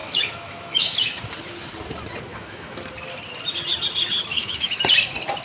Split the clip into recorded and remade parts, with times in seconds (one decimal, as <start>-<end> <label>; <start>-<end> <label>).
0.0-1.2 remade; 1.2-2.3 recorded; 2.3-2.9 remade; 2.9-4.3 recorded; 4.3-4.8 remade; 4.8-5.4 recorded